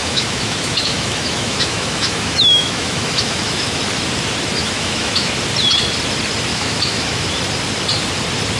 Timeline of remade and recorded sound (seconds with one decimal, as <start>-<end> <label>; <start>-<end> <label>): 0.0-3.8 remade; 3.8-4.6 recorded; 4.6-5.3 remade; 5.3-6.5 recorded; 6.5-7.3 remade; 7.3-8.6 recorded